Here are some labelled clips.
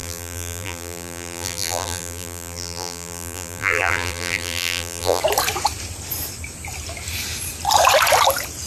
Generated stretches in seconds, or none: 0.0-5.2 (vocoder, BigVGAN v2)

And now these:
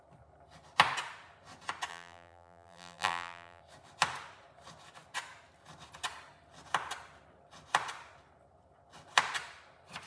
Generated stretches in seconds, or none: 1.9-3.6 (vocoder, BigVGAN v2)

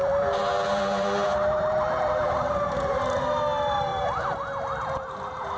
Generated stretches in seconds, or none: 0.0-3.4 (vocoder, BigVGAN v2); 3.9-5.6